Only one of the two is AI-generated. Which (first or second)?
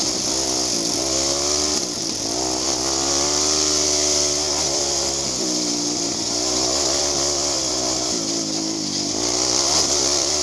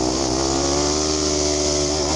first